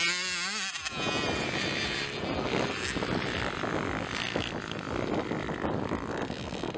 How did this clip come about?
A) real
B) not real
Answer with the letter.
A